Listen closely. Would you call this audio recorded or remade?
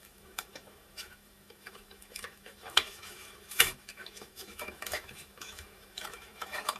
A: remade